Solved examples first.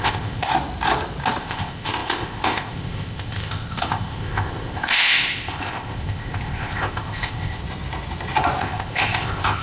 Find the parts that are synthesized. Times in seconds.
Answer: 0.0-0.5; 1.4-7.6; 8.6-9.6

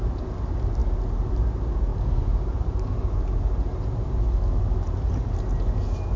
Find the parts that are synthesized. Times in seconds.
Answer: 1.9-3.7